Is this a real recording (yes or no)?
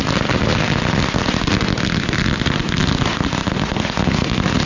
yes